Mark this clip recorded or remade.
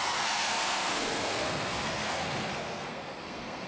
remade